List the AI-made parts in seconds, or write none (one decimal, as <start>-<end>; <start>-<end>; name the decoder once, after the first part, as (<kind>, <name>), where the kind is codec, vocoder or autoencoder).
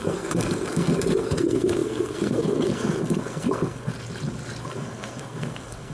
0.0-3.9 (codec, SNAC); 4.6-5.9